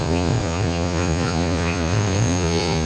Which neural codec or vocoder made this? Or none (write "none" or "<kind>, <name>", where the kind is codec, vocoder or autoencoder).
vocoder, Vocos